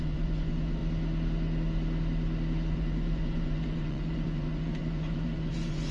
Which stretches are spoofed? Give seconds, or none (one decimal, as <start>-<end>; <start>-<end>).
0.0-0.8; 2.7-5.9